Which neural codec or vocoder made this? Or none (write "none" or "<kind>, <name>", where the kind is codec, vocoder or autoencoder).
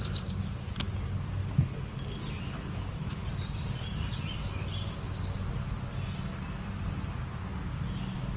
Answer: none